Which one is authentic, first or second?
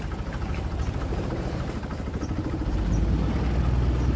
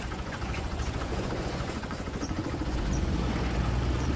first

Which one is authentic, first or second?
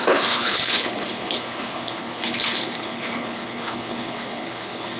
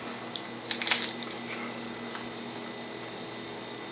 second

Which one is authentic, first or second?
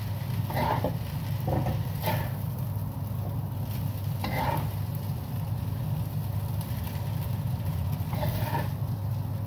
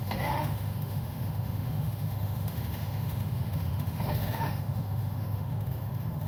first